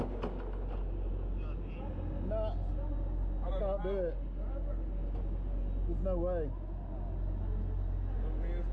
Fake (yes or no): no